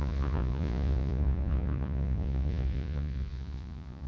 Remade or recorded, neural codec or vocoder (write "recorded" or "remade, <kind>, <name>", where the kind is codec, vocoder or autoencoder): remade, vocoder, Vocos